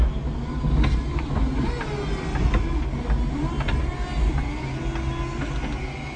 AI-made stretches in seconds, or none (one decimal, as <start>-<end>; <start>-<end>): none